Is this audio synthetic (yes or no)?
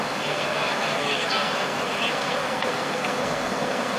yes